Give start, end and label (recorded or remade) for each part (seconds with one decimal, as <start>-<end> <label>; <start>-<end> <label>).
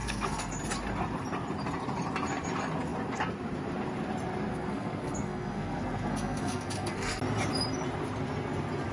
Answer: 0.0-0.5 remade; 0.5-4.5 recorded; 4.5-7.2 remade; 7.2-8.9 recorded